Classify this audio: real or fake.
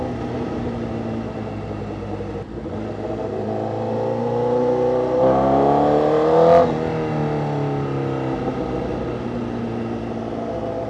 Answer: real